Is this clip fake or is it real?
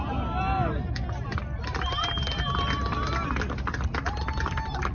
real